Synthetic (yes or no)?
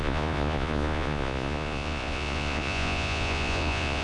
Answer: yes